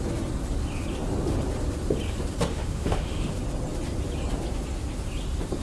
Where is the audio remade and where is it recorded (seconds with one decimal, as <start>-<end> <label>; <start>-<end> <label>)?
0.0-2.5 recorded; 2.5-3.3 remade; 3.3-5.6 recorded